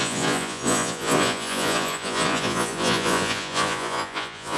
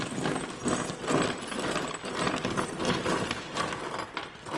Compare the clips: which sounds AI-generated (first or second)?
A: first